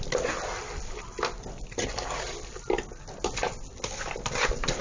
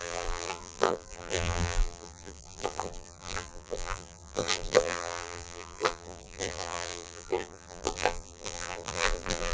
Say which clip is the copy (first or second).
second